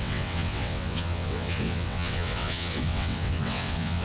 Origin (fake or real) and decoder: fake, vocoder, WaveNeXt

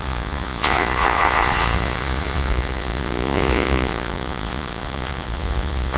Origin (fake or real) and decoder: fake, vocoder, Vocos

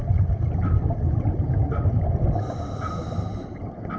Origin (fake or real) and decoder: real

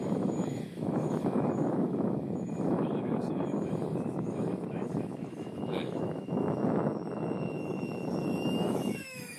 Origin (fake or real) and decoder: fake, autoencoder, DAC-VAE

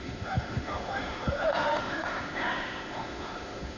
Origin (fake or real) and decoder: fake, autoencoder, DAC-VAE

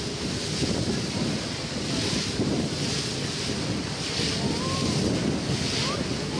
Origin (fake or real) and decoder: real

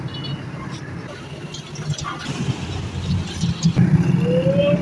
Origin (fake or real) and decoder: real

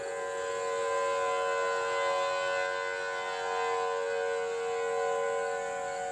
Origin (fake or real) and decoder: real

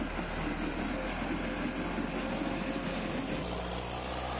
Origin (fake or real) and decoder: real